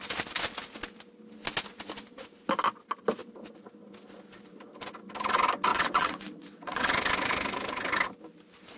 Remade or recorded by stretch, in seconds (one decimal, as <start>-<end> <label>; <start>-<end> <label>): 0.0-5.7 recorded; 5.7-6.9 remade; 6.9-8.8 recorded